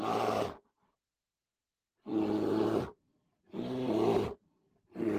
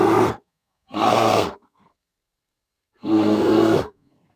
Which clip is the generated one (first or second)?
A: second